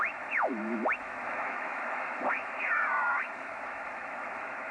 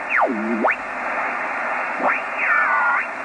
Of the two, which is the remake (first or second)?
first